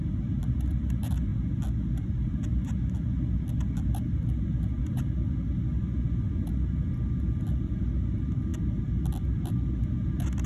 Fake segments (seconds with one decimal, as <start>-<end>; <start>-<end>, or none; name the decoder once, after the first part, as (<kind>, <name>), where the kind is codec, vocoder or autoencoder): none